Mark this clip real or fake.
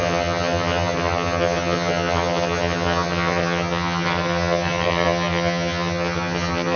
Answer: fake